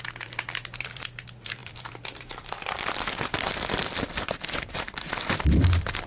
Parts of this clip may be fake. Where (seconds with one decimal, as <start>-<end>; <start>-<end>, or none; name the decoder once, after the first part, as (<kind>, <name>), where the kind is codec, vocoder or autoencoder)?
0.0-6.1 (vocoder, BigVGAN v2)